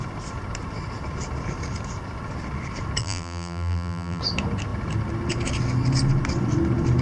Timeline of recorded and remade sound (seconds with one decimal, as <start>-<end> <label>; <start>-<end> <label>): 0.0-3.0 recorded; 3.0-4.2 remade; 4.2-7.0 recorded